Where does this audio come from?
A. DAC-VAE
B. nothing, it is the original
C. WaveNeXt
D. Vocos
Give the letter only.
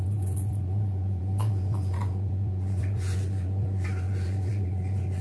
D